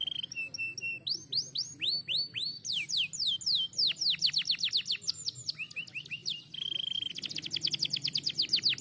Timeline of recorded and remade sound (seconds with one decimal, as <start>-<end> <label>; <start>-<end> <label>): 0.0-8.8 recorded